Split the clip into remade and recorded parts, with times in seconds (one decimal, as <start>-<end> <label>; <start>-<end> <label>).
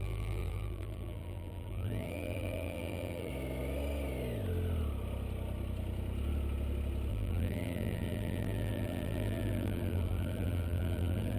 0.0-3.3 remade; 3.3-7.1 recorded; 7.1-11.4 remade